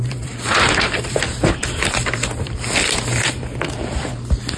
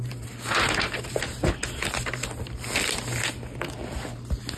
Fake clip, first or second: first